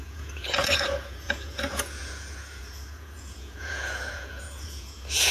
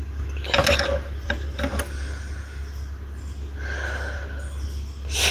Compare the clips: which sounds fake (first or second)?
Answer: first